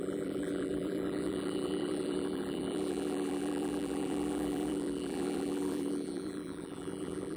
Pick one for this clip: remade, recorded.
remade